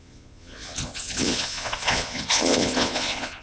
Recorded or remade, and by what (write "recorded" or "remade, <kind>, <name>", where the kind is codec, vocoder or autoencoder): remade, vocoder, Vocos